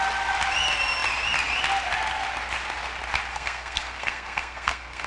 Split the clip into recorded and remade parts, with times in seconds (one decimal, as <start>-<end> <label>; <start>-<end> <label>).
0.0-3.3 recorded; 3.3-5.1 remade